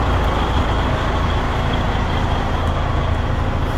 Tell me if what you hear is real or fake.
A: real